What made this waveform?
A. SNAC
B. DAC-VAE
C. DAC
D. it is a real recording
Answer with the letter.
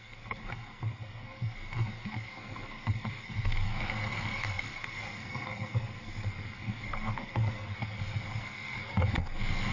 A